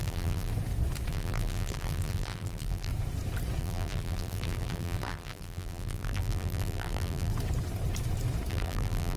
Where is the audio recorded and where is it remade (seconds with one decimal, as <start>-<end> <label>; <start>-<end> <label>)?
0.0-0.5 remade; 0.5-1.1 recorded; 1.1-2.9 remade; 2.9-3.6 recorded; 3.6-7.3 remade; 7.3-8.5 recorded; 8.5-9.2 remade